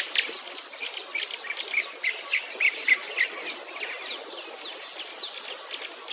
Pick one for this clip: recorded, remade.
recorded